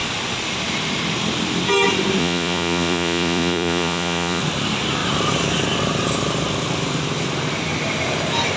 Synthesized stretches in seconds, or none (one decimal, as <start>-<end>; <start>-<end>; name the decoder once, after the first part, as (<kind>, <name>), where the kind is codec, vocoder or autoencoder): 2.2-4.4 (vocoder, Vocos)